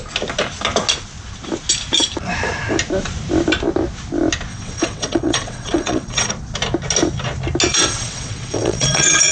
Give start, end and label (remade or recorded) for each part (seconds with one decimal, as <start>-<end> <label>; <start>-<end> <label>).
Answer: 0.0-4.5 recorded; 4.5-6.3 remade; 6.3-7.7 recorded; 7.7-9.3 remade